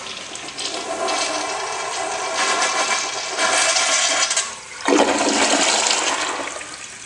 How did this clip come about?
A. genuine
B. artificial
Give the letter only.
A